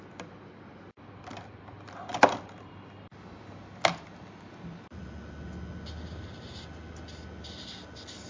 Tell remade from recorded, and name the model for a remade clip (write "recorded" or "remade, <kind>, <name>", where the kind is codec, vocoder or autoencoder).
recorded